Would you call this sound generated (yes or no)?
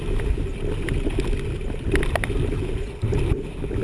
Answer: no